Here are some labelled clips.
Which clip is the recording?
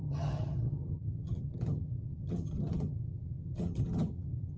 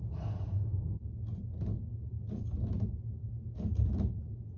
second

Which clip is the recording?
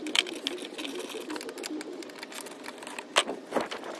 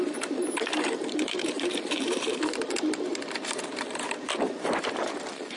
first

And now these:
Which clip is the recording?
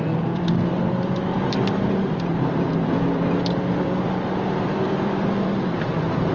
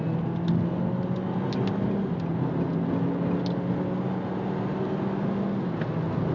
second